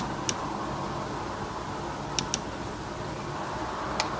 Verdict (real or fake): real